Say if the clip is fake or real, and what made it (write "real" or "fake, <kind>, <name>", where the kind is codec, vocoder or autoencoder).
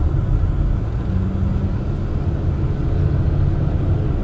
real